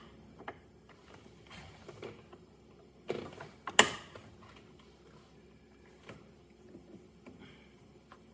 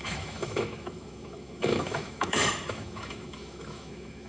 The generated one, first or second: second